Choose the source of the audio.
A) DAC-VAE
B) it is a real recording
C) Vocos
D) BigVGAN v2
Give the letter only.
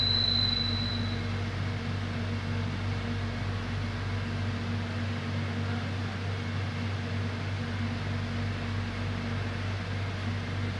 B